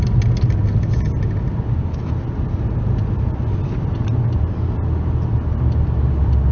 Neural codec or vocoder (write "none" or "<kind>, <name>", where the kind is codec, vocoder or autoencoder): none